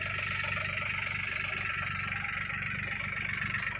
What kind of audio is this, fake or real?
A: real